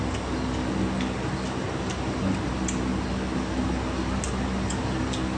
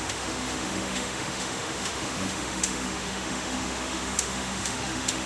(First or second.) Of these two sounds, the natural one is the first